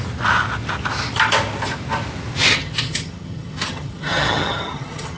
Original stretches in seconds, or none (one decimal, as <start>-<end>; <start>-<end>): 0.0-2.5